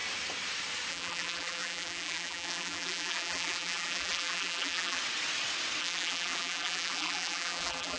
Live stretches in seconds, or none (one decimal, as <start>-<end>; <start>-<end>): 0.0-0.9; 5.0-5.8